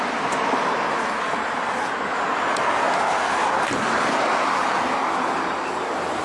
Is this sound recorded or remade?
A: recorded